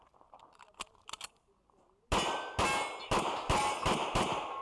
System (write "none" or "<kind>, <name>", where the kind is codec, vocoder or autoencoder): none